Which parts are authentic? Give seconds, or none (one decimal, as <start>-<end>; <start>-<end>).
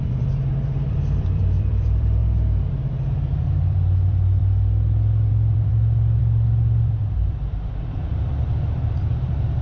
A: 2.2-2.9; 4.4-5.3